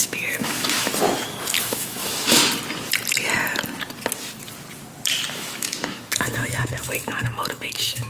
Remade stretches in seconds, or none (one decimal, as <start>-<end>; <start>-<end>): 0.0-0.9; 1.6-2.4; 5.3-8.1

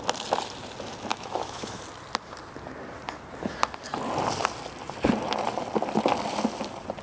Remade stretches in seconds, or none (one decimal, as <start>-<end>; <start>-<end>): 1.1-1.8

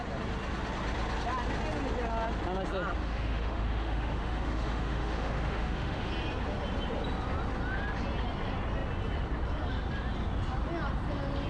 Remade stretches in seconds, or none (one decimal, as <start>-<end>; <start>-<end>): 3.0-6.1

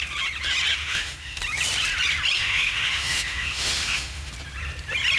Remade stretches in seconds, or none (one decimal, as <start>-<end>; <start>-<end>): 0.8-1.4; 2.4-4.3

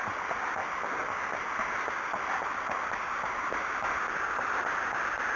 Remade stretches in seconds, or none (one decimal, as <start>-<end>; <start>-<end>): none